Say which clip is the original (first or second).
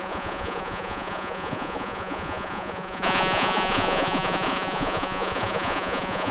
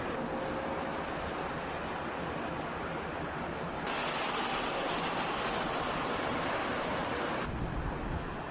second